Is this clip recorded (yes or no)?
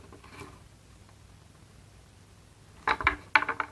yes